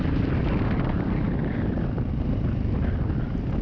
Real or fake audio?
real